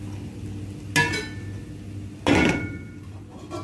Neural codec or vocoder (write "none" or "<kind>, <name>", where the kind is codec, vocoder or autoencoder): none